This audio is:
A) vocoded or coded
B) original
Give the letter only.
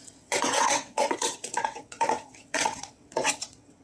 A